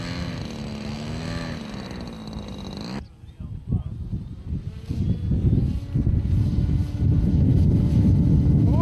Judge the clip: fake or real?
real